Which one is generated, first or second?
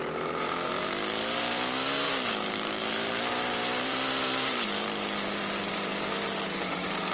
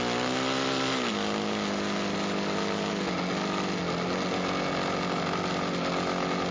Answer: first